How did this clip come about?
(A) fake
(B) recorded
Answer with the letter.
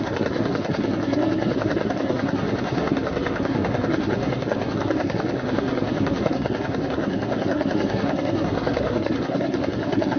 A